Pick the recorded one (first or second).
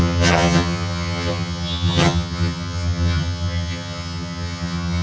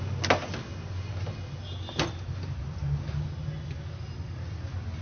second